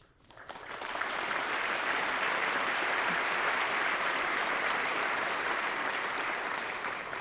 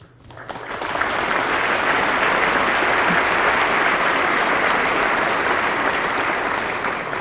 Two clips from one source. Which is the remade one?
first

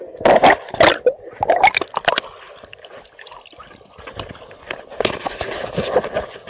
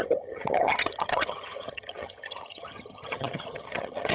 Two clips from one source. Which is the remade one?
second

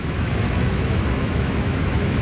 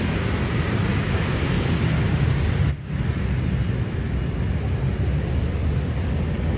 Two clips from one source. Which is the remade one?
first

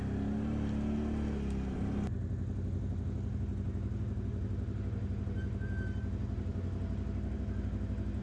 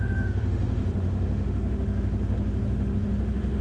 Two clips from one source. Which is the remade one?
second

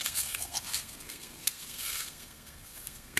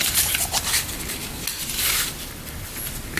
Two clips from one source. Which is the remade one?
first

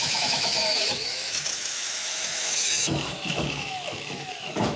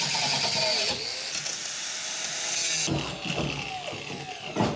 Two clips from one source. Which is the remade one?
first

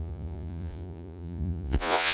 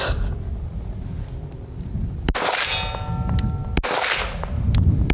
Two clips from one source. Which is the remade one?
first